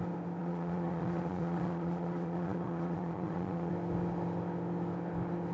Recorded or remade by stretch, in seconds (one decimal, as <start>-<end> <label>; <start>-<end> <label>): 0.0-0.4 recorded; 0.4-3.7 remade; 3.7-5.5 recorded